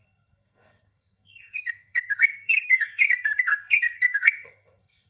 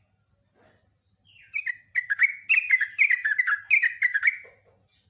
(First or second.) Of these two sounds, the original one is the second